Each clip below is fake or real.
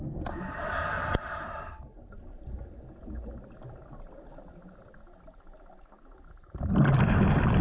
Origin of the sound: real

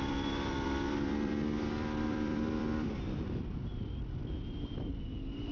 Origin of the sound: fake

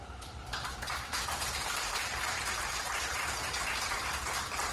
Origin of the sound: fake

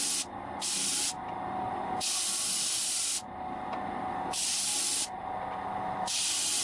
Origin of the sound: real